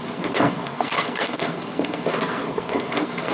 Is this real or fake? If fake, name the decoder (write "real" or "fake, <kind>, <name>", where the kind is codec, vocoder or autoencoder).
fake, codec, SNAC